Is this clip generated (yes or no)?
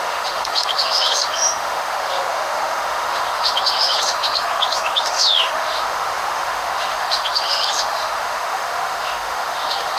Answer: yes